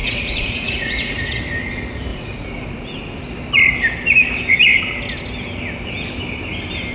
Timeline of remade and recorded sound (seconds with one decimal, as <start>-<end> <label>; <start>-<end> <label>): 0.0-1.4 remade; 1.4-2.1 recorded; 2.1-3.2 remade; 3.2-6.9 recorded